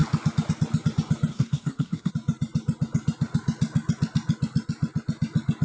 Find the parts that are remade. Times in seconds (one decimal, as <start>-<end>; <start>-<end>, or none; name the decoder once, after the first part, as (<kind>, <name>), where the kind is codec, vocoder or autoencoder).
1.3-2.1 (codec, SNAC)